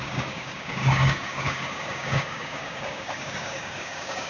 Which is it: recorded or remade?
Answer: remade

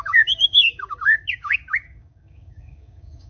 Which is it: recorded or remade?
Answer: remade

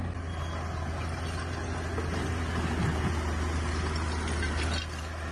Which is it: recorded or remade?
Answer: recorded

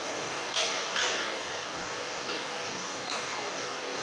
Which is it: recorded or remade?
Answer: remade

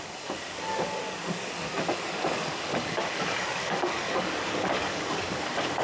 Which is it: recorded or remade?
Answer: remade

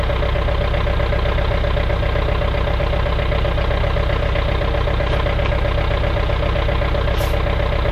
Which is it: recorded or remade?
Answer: recorded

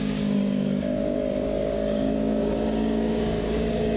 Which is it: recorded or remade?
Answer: remade